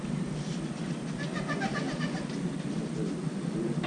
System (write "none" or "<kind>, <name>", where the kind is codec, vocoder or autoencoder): none